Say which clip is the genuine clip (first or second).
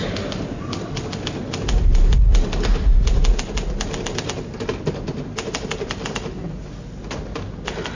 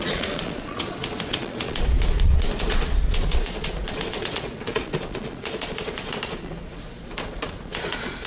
first